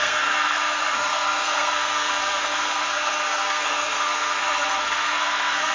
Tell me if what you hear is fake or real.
fake